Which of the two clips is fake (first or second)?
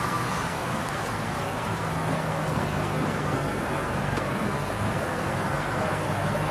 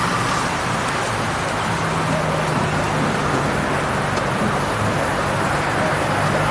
first